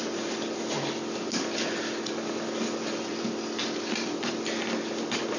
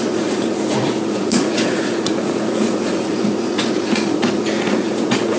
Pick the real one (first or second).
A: first